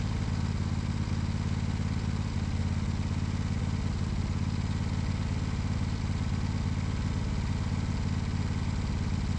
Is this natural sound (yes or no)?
yes